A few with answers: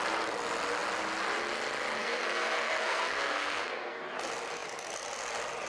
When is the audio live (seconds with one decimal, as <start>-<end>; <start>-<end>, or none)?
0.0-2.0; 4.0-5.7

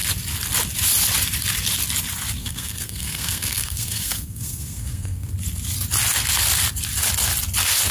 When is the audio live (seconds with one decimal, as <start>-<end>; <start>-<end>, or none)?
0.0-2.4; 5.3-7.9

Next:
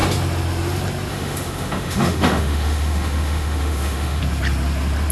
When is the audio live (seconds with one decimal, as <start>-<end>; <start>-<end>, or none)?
0.0-1.1; 4.2-5.1

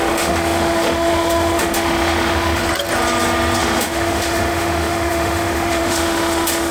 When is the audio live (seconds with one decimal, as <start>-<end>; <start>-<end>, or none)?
2.6-3.6

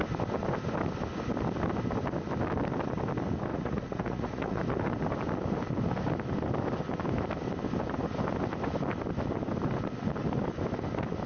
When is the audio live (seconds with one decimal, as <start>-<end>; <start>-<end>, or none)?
0.0-3.5; 4.6-11.3

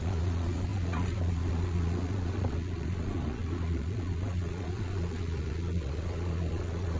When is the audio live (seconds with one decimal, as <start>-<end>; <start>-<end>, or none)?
none